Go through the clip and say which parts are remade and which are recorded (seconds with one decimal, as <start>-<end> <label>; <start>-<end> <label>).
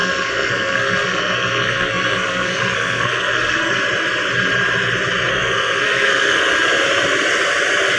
0.0-3.8 remade; 3.8-5.3 recorded; 5.3-6.4 remade; 6.4-8.0 recorded